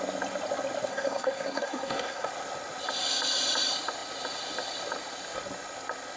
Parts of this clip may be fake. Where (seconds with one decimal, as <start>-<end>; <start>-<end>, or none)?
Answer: 0.9-2.3